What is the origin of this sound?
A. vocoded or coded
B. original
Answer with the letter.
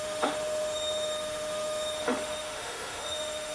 A